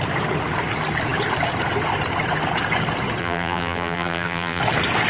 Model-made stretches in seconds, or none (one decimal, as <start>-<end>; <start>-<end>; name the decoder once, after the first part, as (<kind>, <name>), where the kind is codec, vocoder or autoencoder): 3.2-4.6 (vocoder, BigVGAN v2)